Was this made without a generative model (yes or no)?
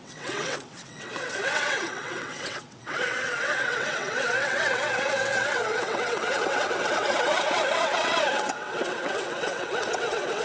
no